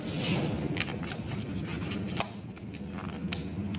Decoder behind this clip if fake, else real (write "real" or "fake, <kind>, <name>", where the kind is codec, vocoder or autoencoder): real